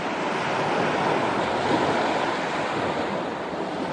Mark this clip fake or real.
real